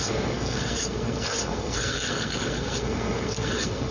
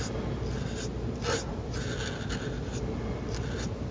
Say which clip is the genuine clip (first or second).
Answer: second